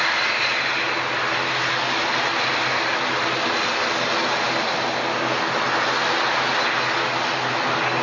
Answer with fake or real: real